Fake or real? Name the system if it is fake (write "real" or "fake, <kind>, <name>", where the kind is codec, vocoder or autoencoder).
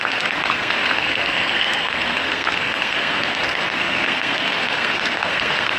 fake, codec, SNAC